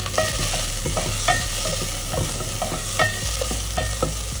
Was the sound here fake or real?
real